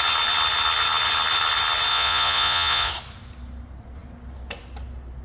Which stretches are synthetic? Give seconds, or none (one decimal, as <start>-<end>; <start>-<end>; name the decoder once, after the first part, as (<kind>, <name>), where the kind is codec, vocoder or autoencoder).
1.9-2.9 (vocoder, Vocos)